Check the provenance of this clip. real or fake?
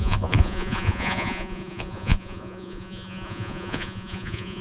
fake